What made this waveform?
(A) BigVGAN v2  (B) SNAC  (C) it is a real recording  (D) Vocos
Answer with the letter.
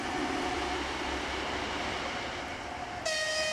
C